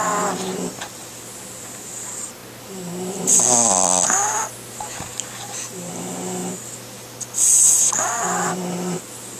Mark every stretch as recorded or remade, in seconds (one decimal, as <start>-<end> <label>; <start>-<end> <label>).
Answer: 0.0-9.4 recorded